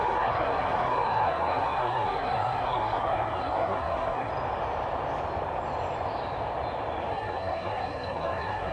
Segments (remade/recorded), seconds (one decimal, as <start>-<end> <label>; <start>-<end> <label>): 0.0-4.3 remade; 4.3-7.1 recorded; 7.1-8.7 remade